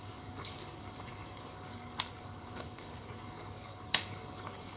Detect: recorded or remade remade